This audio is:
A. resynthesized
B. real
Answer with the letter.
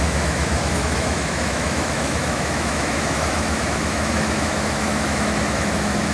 A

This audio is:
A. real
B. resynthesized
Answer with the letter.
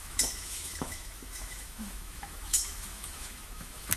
B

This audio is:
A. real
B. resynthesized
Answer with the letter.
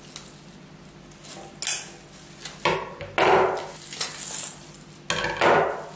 A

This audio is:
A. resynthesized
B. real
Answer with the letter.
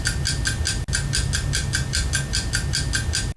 B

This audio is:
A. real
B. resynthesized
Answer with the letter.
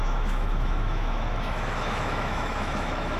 B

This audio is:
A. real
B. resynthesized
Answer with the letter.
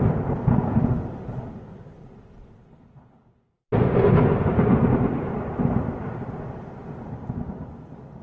A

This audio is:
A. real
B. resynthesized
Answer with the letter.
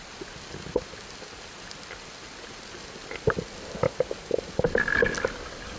A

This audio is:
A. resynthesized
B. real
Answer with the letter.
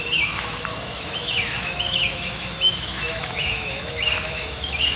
A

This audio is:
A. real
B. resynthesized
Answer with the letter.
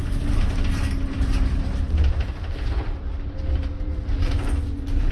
A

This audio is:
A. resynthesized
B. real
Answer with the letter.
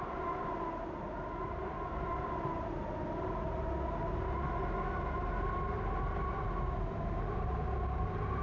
B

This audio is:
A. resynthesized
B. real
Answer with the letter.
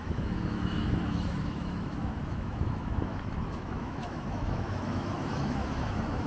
A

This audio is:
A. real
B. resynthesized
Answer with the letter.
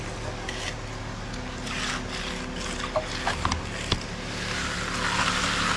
A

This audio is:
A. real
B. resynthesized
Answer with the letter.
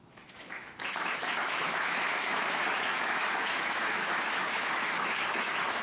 B